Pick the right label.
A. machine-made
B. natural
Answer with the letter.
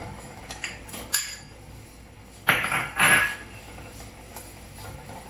A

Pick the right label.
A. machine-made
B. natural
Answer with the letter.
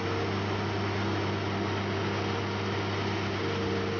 B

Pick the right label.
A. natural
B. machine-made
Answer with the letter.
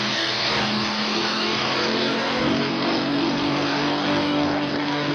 B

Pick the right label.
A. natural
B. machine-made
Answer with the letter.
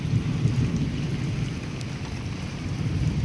A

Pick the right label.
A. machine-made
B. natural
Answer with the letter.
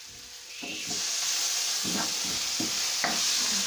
B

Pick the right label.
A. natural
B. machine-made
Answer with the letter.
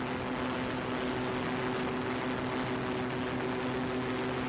A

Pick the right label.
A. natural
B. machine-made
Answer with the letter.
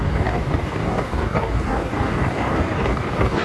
B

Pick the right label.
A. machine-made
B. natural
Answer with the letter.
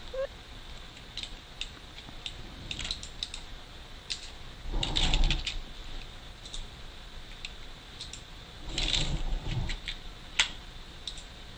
B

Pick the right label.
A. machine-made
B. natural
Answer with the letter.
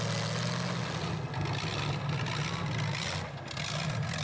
B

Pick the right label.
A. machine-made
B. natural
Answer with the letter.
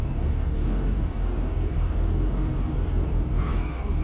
A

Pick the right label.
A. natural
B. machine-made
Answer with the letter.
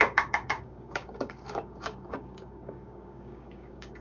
B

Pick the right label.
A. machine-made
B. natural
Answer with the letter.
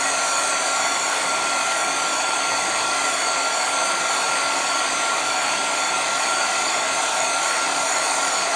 A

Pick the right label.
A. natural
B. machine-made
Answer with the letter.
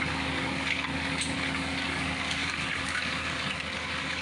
B